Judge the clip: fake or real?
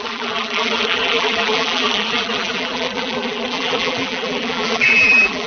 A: fake